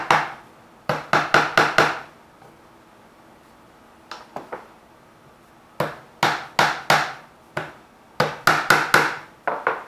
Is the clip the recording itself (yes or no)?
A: yes